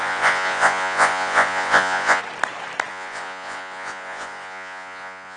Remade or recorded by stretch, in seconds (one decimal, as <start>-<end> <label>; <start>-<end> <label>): 0.0-2.2 remade; 2.2-2.9 recorded; 2.9-5.4 remade